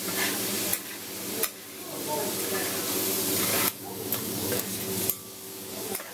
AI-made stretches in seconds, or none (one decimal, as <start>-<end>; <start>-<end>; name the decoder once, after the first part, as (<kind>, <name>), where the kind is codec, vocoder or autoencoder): 3.5-4.8 (codec, DAC); 5.2-6.1